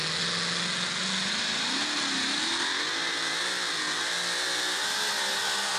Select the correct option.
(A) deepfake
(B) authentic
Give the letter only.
B